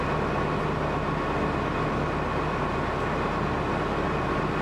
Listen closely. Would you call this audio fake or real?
real